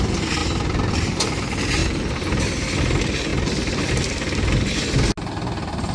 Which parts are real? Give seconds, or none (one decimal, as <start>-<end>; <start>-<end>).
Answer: 0.0-5.9